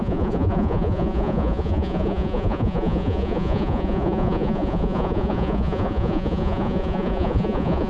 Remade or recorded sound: remade